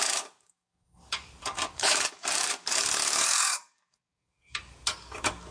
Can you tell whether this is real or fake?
fake